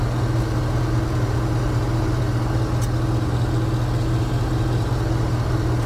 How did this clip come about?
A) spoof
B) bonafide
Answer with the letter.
B